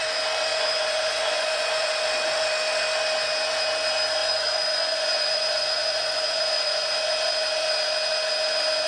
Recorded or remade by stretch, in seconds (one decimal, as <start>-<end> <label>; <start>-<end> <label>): 0.0-0.5 recorded; 0.5-1.9 remade; 1.9-4.2 recorded; 4.2-6.9 remade; 6.9-8.9 recorded